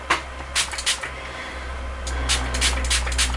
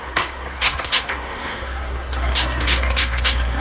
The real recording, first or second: first